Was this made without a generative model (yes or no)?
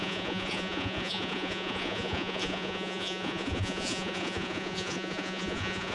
no